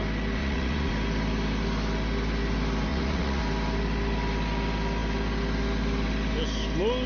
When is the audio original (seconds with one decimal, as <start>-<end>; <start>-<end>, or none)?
0.0-0.4; 0.9-2.9; 3.4-7.1